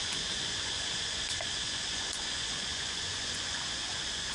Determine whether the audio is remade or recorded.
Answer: remade